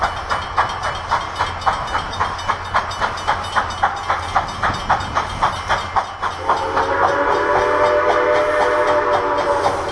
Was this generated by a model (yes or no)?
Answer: no